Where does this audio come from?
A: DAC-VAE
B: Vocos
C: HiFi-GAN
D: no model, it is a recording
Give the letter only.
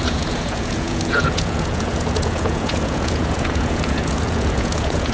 B